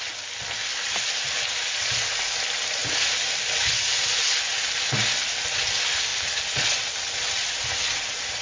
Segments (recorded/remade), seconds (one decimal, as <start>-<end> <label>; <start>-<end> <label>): 0.0-2.8 recorded; 2.8-4.2 remade; 4.2-8.4 recorded